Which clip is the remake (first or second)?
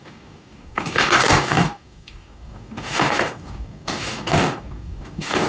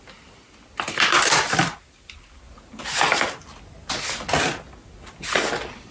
first